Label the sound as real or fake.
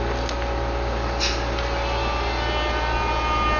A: real